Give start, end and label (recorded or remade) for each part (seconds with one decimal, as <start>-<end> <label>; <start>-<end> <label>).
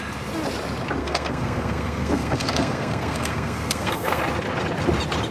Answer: 0.0-1.0 recorded; 1.0-4.2 remade; 4.2-5.3 recorded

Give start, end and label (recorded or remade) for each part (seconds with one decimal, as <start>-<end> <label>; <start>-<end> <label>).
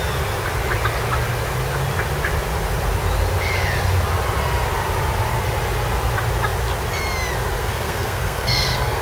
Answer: 0.0-7.6 recorded; 7.6-9.0 remade